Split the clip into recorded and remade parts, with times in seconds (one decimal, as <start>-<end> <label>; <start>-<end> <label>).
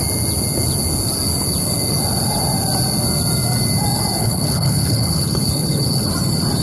0.0-4.2 recorded; 4.2-6.1 remade; 6.1-6.6 recorded